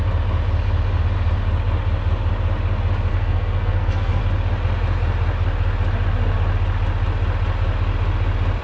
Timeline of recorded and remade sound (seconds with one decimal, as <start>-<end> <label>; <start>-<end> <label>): 0.0-3.1 recorded; 3.1-4.2 remade; 4.2-8.6 recorded